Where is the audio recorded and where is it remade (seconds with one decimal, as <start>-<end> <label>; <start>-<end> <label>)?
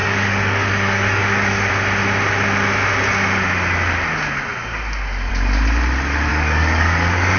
0.0-1.7 remade; 1.7-6.3 recorded; 6.3-7.4 remade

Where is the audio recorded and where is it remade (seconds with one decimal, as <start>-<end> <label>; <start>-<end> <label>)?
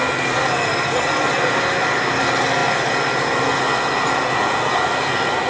0.0-5.5 recorded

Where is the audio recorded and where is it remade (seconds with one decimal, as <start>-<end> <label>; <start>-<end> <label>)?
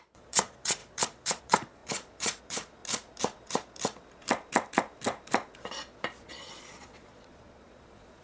0.0-2.8 remade; 2.8-6.2 recorded; 6.2-8.2 remade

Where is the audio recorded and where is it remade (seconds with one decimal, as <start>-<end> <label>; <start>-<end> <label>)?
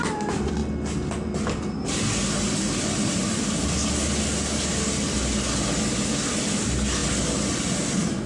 0.0-8.3 recorded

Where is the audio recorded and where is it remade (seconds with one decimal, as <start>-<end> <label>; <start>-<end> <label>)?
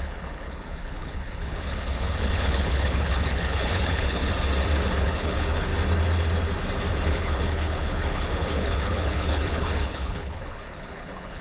0.0-4.2 remade; 4.2-5.0 recorded; 5.0-5.7 remade; 5.7-6.9 recorded; 6.9-11.4 remade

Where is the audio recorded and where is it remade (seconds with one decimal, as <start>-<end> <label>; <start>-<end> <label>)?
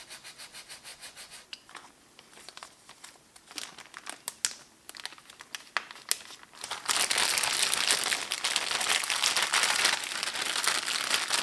0.0-0.9 recorded; 0.9-1.9 remade; 1.9-11.4 recorded